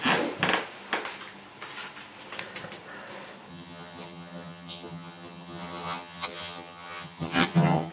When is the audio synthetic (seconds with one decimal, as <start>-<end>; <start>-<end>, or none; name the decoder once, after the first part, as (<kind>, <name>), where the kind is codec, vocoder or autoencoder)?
3.5-7.9 (vocoder, HiFi-GAN)